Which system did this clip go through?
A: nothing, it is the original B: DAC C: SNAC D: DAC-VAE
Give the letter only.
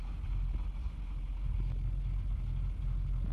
A